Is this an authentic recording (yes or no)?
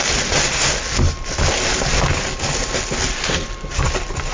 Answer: yes